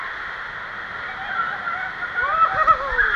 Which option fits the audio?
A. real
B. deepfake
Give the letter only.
A